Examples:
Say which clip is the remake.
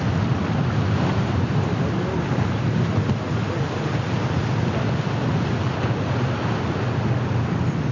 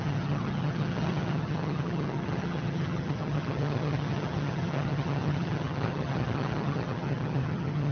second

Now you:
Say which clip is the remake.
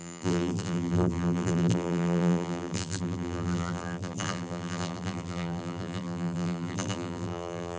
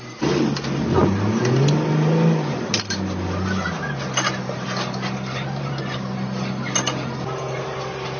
first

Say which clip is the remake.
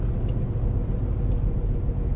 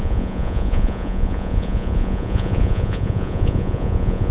second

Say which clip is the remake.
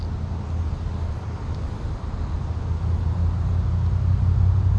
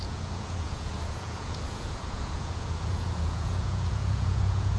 second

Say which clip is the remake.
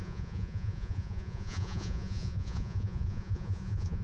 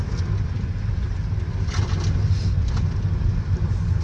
first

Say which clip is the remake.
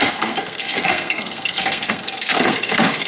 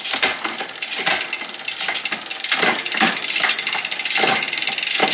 first